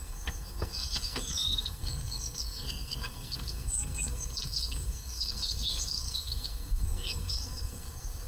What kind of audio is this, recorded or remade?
remade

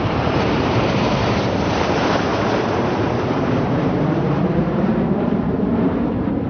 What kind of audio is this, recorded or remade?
remade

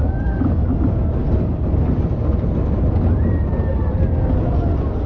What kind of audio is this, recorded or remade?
recorded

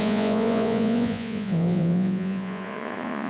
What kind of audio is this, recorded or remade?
remade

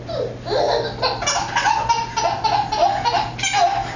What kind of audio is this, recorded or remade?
recorded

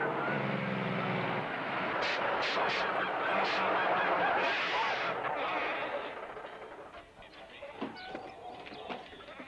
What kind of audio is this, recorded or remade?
recorded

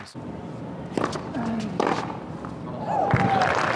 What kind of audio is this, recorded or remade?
recorded